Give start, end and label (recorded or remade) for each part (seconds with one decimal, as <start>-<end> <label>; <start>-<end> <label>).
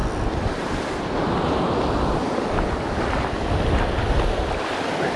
0.0-5.2 recorded